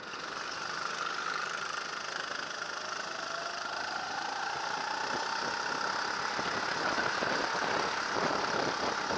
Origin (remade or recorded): recorded